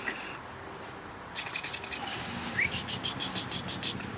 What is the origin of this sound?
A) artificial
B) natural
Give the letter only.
B